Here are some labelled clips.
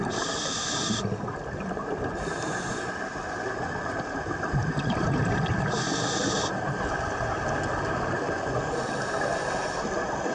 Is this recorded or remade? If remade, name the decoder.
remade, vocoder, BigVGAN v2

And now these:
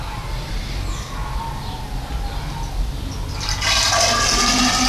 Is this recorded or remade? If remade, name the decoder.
recorded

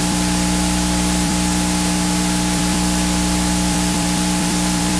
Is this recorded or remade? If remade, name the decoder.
remade, vocoder, BigVGAN v2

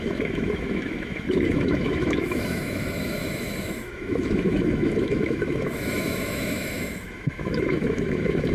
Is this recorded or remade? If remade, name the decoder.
remade, autoencoder, DAC-VAE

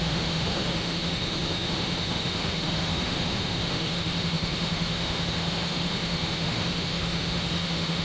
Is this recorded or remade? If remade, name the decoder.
remade, autoencoder, DAC-VAE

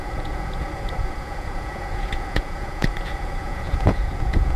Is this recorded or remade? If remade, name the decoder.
remade, vocoder, Vocos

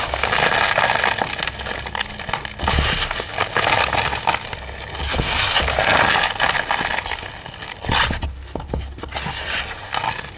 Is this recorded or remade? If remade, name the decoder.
recorded